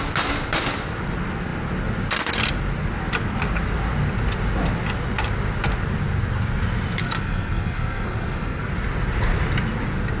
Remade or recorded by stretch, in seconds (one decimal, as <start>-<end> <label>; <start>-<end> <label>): 0.0-7.0 recorded; 7.0-8.7 remade; 8.7-10.2 recorded